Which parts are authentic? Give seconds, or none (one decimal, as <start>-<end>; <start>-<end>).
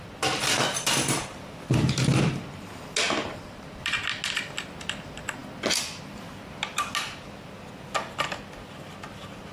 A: 0.0-3.2; 3.8-9.5